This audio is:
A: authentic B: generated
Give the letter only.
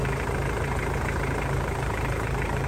B